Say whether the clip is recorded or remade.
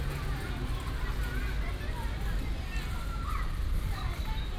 recorded